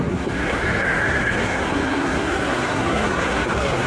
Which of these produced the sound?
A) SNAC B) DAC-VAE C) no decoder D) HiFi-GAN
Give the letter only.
A